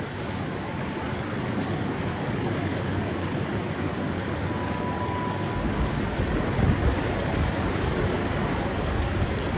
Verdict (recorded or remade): remade